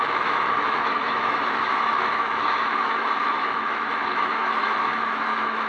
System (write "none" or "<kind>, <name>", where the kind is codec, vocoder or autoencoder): autoencoder, DAC-VAE